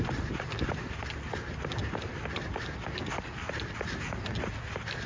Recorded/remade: recorded